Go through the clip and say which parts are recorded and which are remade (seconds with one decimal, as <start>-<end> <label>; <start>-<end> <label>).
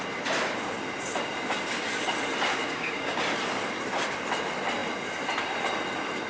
0.0-2.5 recorded; 2.5-3.2 remade; 3.2-6.3 recorded